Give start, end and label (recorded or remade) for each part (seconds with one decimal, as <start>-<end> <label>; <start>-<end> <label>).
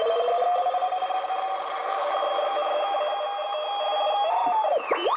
0.0-1.8 recorded; 1.8-4.7 remade; 4.7-5.2 recorded